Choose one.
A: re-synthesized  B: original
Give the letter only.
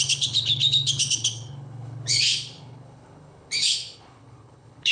A